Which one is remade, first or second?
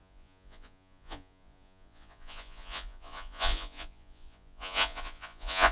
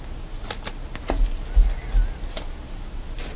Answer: first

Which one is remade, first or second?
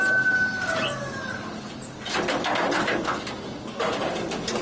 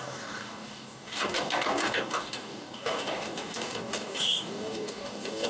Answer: second